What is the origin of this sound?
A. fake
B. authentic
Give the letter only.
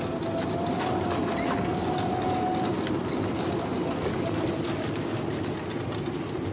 B